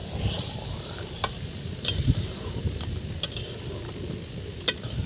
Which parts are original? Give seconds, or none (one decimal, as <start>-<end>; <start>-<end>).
3.1-5.1